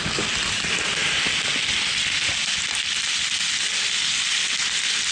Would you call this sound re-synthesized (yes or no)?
no